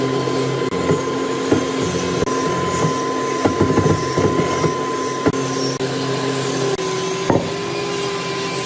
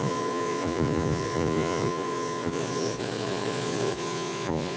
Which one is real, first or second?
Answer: first